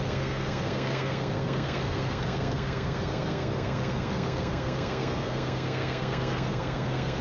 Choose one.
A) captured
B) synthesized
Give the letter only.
B